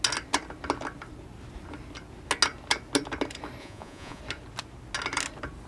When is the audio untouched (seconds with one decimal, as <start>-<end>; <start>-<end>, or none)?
0.0-3.6; 4.2-5.7